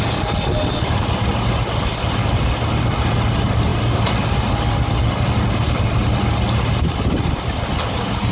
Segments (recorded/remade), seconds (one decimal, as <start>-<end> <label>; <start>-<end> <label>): 0.0-8.3 recorded